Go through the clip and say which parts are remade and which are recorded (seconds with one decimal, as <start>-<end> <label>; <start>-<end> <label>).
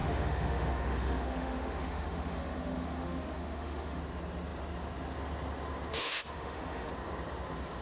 0.0-4.0 remade; 4.0-5.9 recorded; 5.9-6.9 remade; 6.9-7.8 recorded